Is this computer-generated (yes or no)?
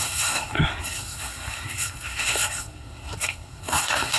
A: yes